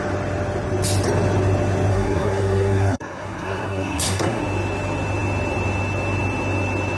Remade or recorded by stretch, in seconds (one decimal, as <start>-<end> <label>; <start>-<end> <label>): 0.0-1.9 recorded; 1.9-4.4 remade; 4.4-7.0 recorded